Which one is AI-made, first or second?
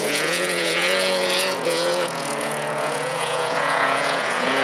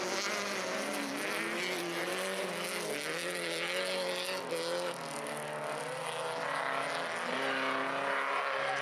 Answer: first